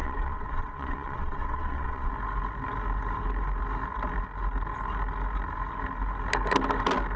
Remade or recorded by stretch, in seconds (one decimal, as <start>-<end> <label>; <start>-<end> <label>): 0.0-2.1 remade; 2.1-7.2 recorded